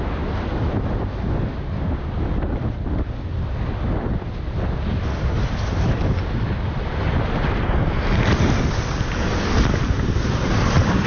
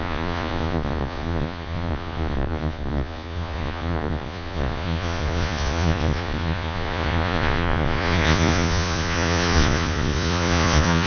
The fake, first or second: second